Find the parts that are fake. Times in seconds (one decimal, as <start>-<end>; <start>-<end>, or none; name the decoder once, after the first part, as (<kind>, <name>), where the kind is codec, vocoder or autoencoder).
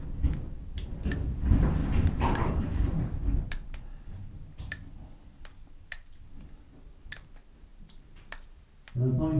1.8-2.9 (vocoder, BigVGAN v2)